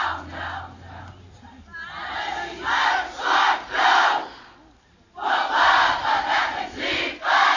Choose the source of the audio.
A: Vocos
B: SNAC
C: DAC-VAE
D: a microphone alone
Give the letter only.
D